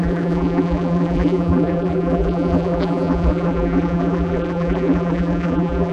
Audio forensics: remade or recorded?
remade